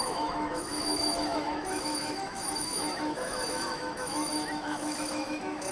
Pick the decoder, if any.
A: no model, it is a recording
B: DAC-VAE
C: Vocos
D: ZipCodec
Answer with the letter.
B